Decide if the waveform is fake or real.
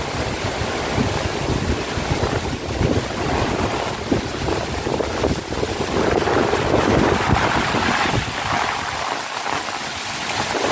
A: real